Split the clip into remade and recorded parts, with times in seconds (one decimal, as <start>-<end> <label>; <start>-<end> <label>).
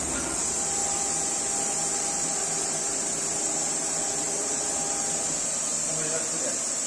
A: 0.0-6.9 recorded